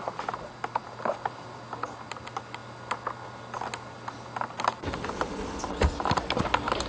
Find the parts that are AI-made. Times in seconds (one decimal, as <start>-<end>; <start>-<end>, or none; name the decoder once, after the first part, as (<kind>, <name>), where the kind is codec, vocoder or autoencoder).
none